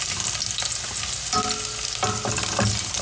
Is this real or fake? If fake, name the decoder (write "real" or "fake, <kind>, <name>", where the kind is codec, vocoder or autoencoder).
real